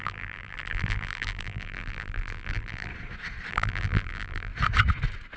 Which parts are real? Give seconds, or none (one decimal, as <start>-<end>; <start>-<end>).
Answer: 2.9-3.5; 4.5-5.4